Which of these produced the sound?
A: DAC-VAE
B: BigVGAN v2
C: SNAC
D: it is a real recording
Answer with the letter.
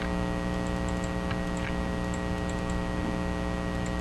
D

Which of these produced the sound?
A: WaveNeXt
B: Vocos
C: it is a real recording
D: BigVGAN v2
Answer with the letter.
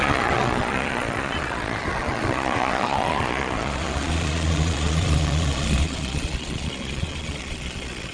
B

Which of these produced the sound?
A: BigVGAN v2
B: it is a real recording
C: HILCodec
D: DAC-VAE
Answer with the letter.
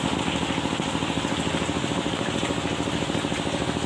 B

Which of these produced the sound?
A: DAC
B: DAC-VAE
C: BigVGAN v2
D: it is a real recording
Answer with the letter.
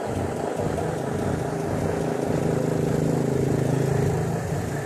D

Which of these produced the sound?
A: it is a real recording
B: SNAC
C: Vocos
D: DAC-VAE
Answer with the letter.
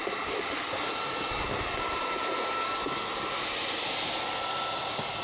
A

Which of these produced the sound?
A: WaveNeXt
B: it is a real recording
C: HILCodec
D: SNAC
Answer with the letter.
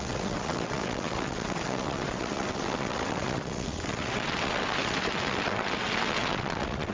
A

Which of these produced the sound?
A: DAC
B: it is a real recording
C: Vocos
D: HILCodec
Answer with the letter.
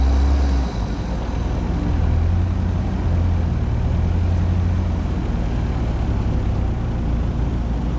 B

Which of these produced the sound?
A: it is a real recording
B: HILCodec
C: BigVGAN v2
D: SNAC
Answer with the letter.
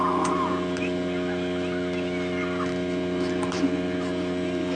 A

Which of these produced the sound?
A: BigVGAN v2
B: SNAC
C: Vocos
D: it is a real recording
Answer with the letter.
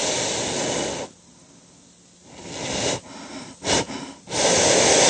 D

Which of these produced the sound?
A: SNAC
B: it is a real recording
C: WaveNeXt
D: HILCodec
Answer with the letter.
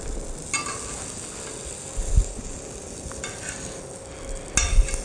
B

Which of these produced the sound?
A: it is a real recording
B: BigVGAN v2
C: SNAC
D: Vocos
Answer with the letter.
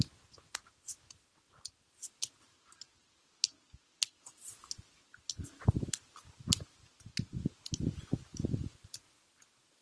A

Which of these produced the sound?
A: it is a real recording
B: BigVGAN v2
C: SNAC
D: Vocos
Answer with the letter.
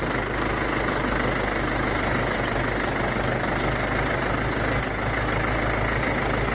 A